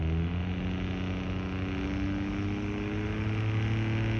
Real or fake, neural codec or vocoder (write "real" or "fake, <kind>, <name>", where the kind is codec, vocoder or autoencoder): real